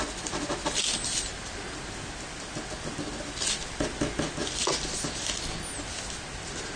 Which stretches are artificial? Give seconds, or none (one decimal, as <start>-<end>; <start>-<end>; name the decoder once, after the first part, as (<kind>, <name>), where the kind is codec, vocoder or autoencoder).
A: none